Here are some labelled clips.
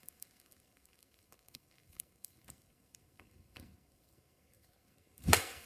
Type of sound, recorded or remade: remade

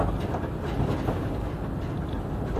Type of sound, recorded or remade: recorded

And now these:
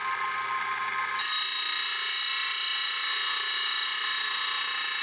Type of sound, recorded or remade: recorded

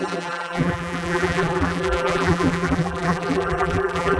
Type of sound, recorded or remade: remade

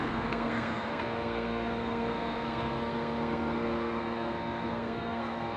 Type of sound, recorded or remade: remade